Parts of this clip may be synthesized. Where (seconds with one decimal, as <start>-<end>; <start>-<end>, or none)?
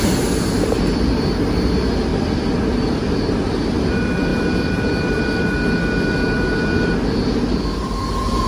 none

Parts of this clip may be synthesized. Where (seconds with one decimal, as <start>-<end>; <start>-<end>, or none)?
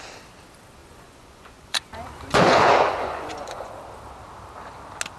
0.8-3.7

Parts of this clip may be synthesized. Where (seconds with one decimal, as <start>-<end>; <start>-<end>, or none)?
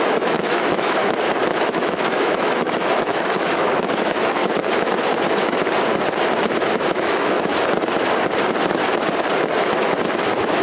0.0-1.0; 1.6-4.4; 7.0-7.5; 10.1-10.6